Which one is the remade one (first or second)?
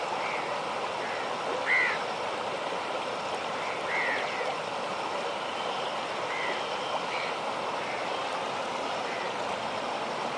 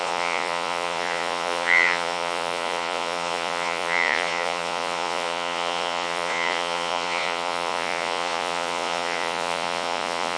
second